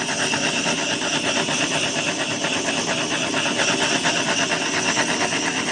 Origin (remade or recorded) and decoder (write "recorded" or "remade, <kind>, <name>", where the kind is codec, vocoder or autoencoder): recorded